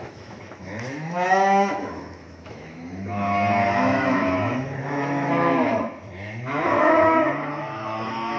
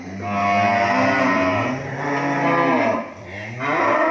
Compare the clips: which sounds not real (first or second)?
first